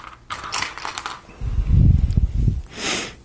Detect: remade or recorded recorded